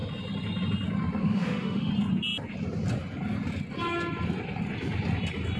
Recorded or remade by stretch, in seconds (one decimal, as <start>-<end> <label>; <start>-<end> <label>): 0.0-1.2 recorded; 1.2-1.9 remade; 1.9-5.6 recorded